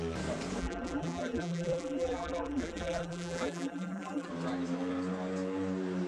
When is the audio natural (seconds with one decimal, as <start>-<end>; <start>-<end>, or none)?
0.0-0.6; 4.3-6.1